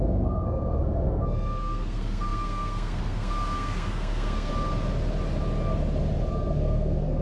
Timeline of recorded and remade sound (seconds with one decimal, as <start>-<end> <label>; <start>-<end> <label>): 0.0-4.5 remade; 4.5-6.3 recorded; 6.3-7.2 remade